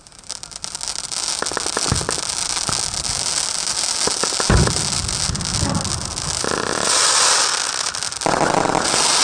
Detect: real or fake real